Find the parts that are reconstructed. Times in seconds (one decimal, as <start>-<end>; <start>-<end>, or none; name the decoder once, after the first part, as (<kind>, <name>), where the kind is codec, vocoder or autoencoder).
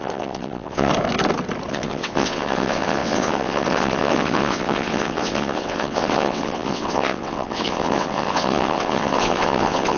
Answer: 0.0-0.9 (vocoder, WaveNeXt); 1.7-10.0